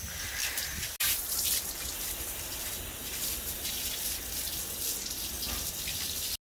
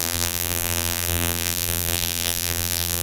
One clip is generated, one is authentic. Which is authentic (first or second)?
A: first